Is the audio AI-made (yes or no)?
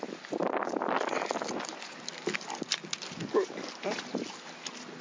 no